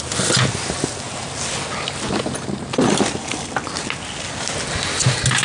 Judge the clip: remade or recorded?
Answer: recorded